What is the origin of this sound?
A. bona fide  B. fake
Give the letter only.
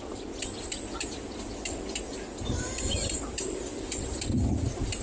A